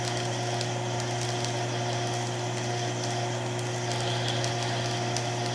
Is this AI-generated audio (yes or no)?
no